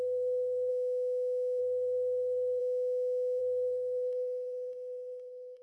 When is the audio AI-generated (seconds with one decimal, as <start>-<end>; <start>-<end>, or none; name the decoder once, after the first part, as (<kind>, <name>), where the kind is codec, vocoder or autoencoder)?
0.0-0.7 (codec, SNAC); 1.6-2.6; 3.4-5.6